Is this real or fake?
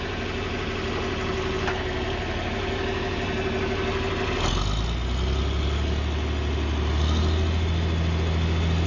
real